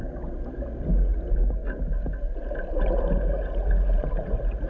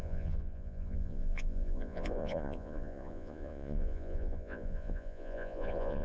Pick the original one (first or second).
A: first